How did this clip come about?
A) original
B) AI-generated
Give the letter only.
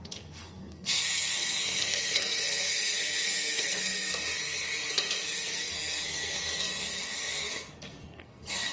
B